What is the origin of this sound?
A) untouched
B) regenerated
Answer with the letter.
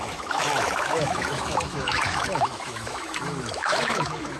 B